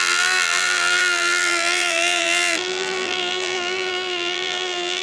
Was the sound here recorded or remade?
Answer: remade